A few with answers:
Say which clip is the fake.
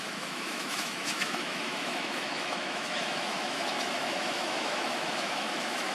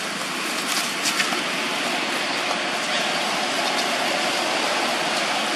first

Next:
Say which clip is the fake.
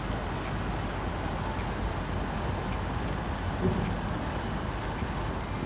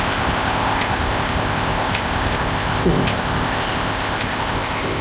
second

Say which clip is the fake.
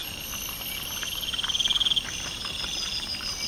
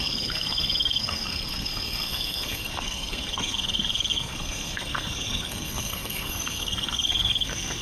second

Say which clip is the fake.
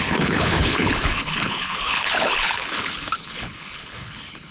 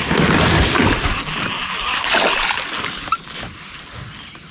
first